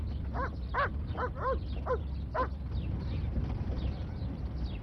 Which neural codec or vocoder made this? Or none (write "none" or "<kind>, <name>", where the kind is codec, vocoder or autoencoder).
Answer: vocoder, BigVGAN v2